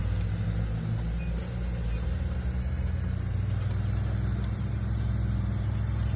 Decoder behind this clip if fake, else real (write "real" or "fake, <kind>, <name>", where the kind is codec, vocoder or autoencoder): real